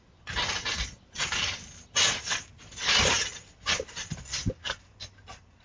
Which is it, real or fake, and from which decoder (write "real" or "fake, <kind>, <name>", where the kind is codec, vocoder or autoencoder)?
real